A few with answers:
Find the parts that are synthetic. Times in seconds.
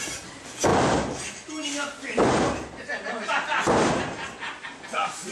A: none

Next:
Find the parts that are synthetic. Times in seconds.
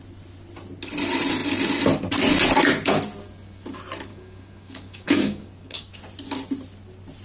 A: 4.1-6.0 (codec, DAC)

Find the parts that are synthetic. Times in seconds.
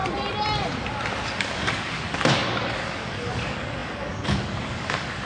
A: 1.4-5.3 (codec, DAC)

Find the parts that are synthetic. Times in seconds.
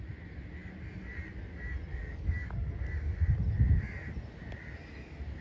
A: 1.9-2.7 (codec, DAC)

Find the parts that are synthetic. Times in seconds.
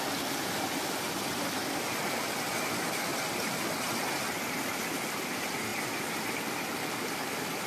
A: none